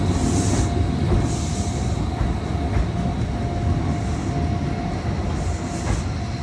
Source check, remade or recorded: recorded